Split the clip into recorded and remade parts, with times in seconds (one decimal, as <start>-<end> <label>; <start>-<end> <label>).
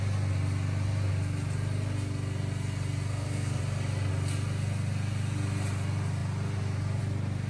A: 0.0-3.1 recorded; 3.1-3.6 remade; 3.6-7.5 recorded